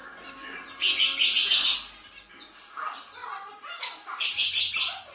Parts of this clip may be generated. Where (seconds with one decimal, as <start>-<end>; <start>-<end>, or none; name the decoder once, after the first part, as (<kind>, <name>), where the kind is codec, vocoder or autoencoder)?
3.2-3.8 (vocoder, BigVGAN v2)